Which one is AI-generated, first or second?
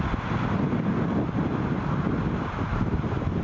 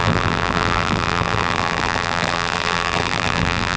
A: second